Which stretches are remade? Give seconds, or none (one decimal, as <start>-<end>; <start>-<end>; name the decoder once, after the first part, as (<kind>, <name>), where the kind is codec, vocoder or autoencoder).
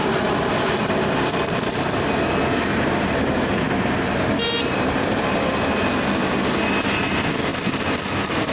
0.0-1.9 (vocoder, BigVGAN v2); 2.7-5.5; 7.5-8.5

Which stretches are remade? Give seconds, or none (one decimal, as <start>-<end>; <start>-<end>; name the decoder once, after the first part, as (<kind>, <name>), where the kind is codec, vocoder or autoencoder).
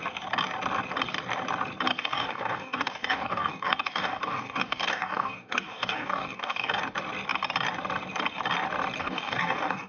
1.9-6.8 (codec, DAC); 9.0-9.9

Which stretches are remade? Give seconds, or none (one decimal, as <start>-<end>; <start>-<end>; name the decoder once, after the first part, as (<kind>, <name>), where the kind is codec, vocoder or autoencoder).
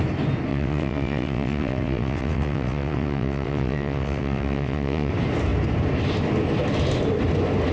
0.5-5.1 (vocoder, WaveNeXt)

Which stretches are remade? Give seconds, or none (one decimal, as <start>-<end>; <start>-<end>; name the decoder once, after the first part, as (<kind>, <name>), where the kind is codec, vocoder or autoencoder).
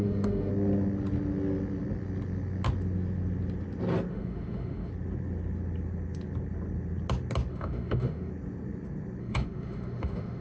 0.0-0.5 (autoencoder, DAC-VAE); 4.1-4.9; 7.5-8.3; 9.2-10.4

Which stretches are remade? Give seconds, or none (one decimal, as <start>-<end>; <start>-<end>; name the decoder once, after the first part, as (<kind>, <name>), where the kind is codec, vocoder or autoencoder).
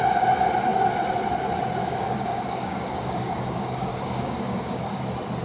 1.8-5.0 (codec, DAC)